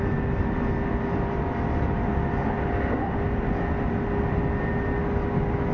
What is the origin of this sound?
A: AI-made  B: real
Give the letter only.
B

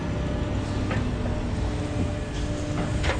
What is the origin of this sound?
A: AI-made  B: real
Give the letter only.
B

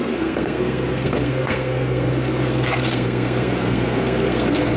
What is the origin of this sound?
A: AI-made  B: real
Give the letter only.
A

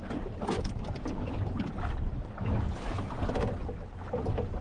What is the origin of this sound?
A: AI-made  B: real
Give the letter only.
B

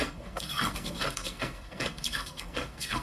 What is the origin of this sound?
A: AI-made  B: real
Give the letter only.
A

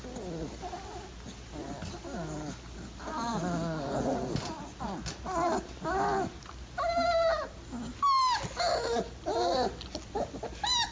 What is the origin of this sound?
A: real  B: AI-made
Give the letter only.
A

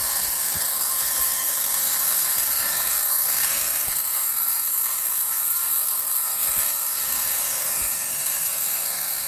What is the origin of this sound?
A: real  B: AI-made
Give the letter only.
B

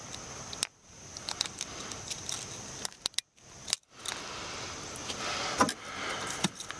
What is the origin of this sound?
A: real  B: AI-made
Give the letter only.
A